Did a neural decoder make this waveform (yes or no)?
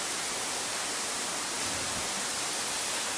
no